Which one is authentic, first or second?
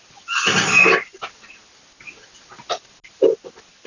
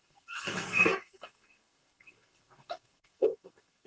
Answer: first